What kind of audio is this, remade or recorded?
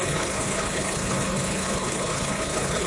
remade